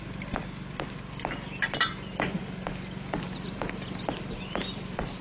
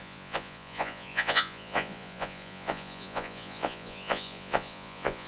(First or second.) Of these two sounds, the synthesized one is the second